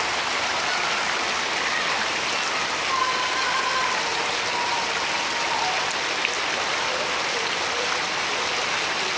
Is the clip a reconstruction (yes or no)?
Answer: no